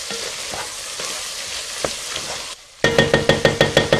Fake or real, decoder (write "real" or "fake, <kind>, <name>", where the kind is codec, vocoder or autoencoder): real